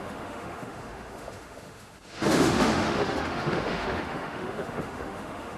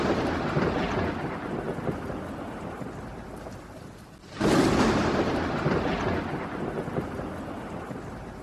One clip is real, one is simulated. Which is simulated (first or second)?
first